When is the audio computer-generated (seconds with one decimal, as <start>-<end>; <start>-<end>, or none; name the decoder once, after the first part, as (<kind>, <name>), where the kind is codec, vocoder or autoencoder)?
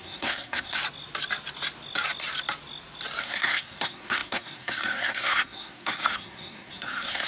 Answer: 0.0-0.8 (codec, SNAC); 3.2-7.3